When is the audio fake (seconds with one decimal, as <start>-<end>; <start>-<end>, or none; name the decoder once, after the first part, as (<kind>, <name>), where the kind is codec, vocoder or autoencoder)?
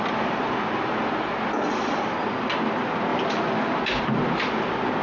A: none